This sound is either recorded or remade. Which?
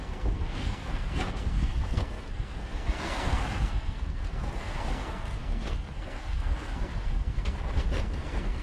remade